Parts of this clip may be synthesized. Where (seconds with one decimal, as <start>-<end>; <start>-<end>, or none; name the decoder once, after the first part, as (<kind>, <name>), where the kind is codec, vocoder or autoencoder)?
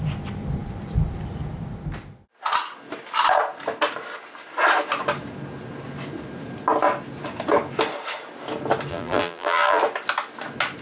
8.9-9.8 (vocoder, BigVGAN v2)